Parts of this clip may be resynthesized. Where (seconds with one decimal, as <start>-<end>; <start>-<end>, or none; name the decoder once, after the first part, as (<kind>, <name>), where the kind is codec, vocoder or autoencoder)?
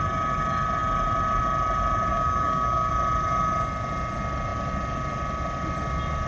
2.1-2.9 (codec, DAC)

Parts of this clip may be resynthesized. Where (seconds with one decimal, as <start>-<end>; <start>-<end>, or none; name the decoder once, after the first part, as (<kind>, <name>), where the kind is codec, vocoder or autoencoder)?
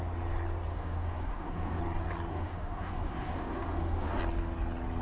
0.7-1.8 (autoencoder, DAC-VAE); 2.3-4.2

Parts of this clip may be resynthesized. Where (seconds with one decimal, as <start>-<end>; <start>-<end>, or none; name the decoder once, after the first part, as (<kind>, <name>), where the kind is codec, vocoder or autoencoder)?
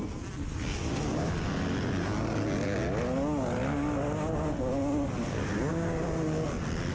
none